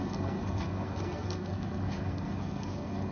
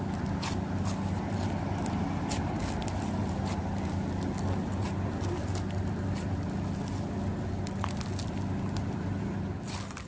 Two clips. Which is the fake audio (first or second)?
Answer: first